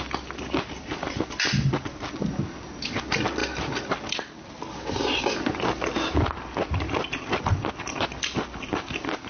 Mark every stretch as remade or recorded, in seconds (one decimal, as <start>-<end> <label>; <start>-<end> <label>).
0.0-9.3 recorded